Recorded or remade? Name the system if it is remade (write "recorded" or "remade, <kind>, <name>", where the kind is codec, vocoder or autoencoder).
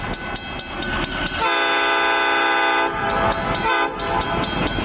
recorded